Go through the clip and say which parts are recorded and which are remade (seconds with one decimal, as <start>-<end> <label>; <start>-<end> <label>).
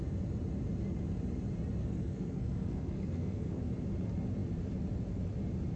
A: 0.0-1.8 recorded; 1.8-3.6 remade; 3.6-5.8 recorded